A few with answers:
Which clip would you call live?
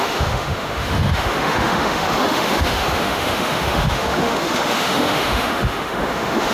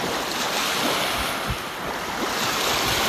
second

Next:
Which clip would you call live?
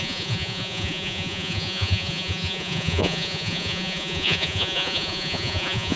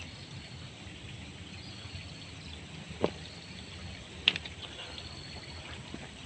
second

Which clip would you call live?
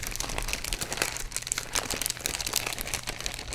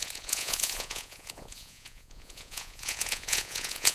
first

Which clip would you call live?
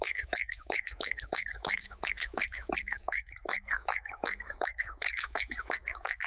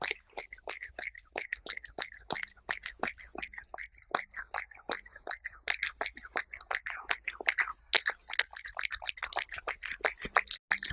second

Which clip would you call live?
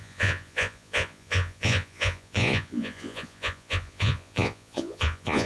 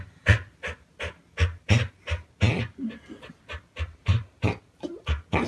second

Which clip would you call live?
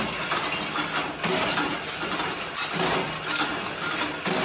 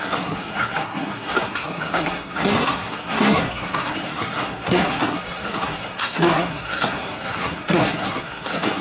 first